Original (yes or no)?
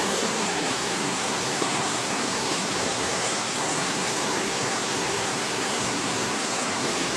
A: no